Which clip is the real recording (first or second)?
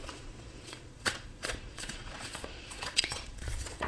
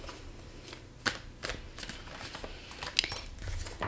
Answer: second